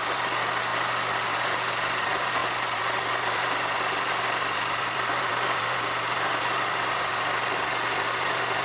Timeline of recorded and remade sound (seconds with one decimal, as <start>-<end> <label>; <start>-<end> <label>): 0.0-0.7 remade; 0.7-1.3 recorded; 1.3-8.6 remade